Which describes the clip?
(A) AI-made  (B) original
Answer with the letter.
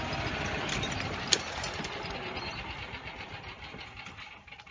B